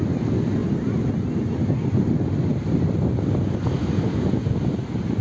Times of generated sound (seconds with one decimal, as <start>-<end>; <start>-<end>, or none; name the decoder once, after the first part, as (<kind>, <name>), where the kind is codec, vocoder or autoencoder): none